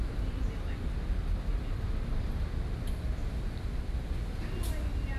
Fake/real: real